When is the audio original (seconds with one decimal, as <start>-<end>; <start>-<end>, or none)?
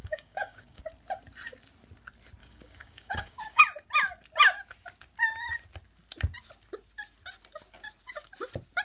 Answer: 0.8-2.4; 3.6-8.8